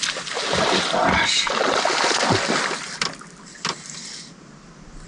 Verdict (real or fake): real